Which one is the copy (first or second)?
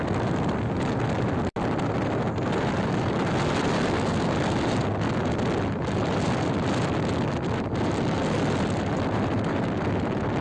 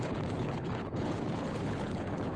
second